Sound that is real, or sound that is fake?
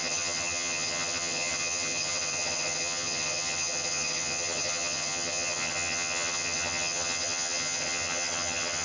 fake